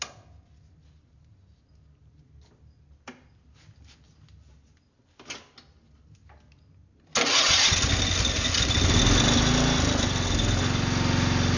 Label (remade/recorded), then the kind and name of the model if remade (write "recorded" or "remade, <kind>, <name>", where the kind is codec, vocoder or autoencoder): recorded